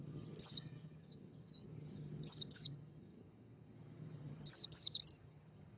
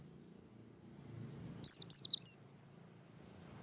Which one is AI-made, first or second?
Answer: first